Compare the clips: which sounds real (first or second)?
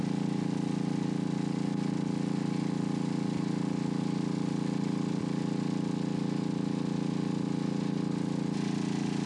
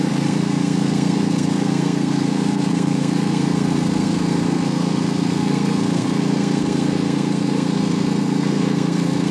first